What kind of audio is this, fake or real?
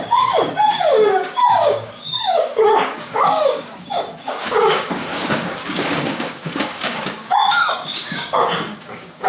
fake